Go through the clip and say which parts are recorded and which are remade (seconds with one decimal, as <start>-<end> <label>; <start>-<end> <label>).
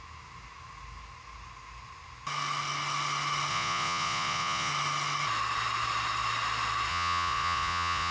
0.0-3.5 recorded; 3.5-4.7 remade; 4.7-6.9 recorded; 6.9-8.1 remade